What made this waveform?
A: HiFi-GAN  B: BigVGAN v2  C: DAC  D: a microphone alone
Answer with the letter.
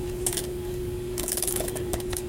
C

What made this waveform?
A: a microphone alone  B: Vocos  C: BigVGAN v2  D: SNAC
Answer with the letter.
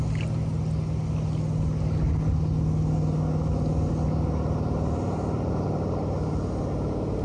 A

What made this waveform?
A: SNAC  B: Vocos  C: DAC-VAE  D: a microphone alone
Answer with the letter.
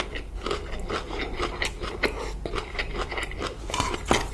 D